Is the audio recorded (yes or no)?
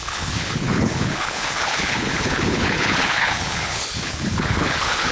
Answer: no